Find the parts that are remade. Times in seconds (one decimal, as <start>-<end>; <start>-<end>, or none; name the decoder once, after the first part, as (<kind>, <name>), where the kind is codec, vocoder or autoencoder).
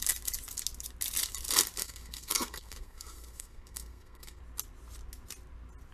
1.8-4.4 (codec, SNAC)